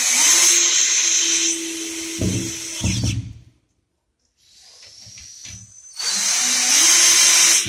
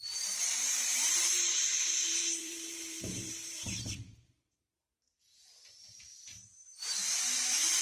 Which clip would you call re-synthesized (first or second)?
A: second